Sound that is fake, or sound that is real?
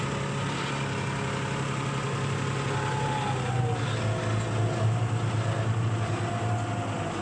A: real